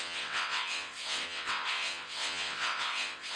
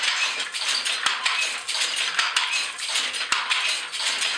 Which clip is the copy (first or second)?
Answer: first